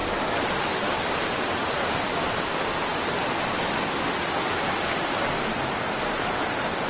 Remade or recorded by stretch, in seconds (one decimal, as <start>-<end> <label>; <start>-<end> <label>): 0.0-2.0 remade; 2.0-6.9 recorded

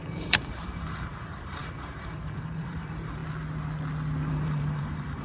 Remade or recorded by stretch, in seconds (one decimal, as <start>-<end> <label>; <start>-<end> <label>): 0.0-3.2 remade; 3.2-4.3 recorded; 4.3-5.2 remade

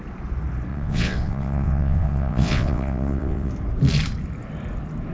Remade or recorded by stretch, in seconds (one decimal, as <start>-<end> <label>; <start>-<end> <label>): 0.0-0.7 recorded; 0.7-3.5 remade; 3.5-5.1 recorded

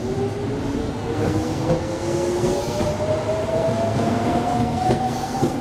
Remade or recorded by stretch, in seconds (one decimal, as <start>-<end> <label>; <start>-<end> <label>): 0.0-0.8 recorded; 0.8-2.8 remade; 2.8-3.5 recorded; 3.5-5.6 remade

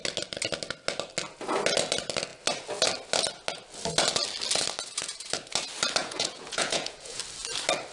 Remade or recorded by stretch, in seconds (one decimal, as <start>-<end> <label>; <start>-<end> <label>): 0.0-6.0 recorded; 6.0-7.2 remade; 7.2-7.9 recorded

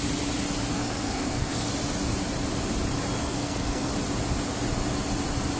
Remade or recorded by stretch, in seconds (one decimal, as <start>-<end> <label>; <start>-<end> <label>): 0.0-0.7 recorded; 0.7-1.7 remade; 1.7-3.2 recorded; 3.2-3.9 remade; 3.9-5.6 recorded

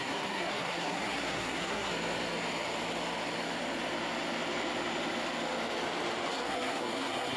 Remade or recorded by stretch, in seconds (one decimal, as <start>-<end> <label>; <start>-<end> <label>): 0.0-1.9 remade; 1.9-6.3 recorded; 6.3-7.4 remade

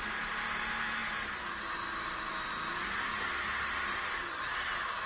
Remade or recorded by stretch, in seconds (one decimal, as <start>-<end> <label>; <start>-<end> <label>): 0.0-5.1 recorded